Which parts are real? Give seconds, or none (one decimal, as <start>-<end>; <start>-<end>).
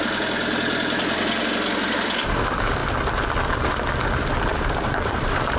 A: 0.0-4.5